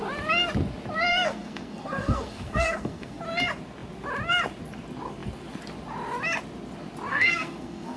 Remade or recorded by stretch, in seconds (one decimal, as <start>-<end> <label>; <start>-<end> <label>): 0.0-1.1 recorded; 1.1-3.2 remade; 3.2-7.1 recorded; 7.1-8.0 remade